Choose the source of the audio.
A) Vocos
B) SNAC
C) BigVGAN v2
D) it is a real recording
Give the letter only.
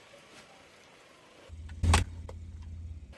D